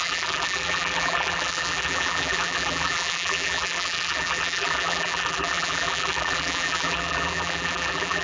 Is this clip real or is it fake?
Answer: fake